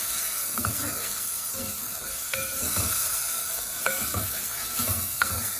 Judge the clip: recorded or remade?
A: remade